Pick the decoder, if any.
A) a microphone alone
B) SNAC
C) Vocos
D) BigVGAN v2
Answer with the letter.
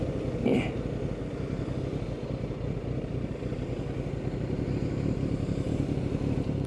A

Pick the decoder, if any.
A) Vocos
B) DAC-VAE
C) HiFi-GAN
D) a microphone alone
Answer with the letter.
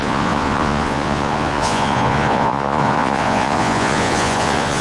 A